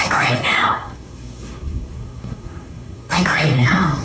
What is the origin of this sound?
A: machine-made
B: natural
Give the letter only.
A